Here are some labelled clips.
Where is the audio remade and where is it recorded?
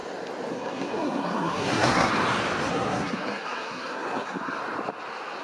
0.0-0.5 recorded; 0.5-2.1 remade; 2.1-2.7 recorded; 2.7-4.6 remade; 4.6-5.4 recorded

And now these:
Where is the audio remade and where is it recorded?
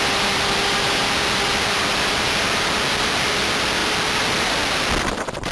0.0-5.5 recorded